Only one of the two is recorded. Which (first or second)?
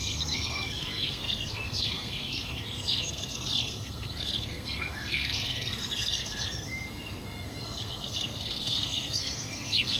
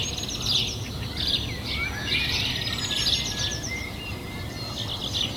second